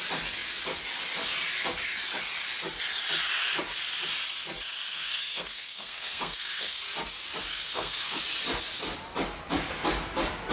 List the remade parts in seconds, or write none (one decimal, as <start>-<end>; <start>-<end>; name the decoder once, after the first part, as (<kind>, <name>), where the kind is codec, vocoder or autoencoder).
4.9-6.8 (codec, SNAC); 7.5-8.2